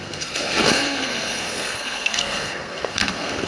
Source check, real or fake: fake